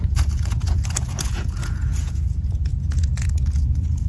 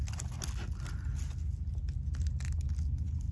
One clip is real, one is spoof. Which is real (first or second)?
second